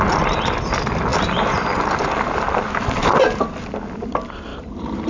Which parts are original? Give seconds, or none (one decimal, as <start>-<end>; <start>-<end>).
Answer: 0.0-1.1; 1.7-4.5